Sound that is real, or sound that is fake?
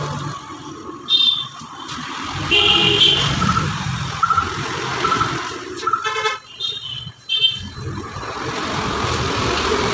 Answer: fake